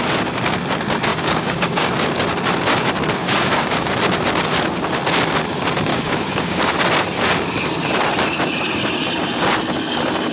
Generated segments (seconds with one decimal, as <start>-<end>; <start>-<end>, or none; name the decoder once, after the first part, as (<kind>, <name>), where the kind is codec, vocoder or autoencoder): 1.1-1.9 (codec, DAC); 3.2-3.9; 5.9-6.6